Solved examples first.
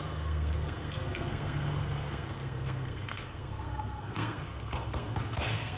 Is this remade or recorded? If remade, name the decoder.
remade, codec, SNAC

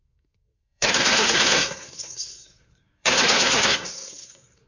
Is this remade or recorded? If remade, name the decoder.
remade, codec, SNAC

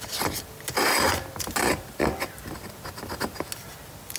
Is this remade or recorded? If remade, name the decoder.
recorded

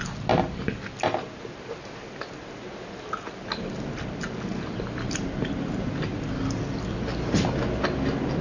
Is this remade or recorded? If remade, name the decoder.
recorded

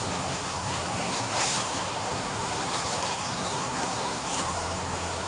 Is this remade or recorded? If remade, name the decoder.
remade, codec, SNAC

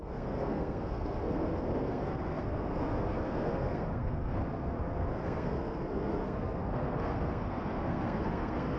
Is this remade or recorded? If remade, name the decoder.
remade, codec, SNAC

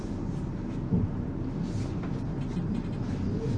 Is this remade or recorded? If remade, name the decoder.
recorded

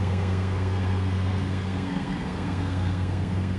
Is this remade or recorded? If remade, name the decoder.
remade, codec, SNAC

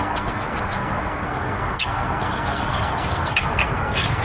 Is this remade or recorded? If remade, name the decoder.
remade, codec, SNAC